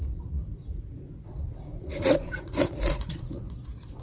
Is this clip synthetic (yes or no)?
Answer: yes